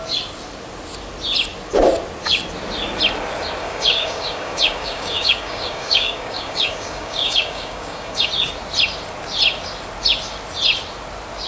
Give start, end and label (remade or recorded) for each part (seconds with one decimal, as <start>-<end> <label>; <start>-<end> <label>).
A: 0.0-3.6 recorded; 3.6-8.3 remade; 8.3-11.5 recorded